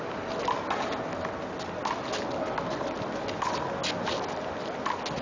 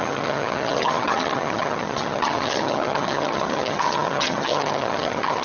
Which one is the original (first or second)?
first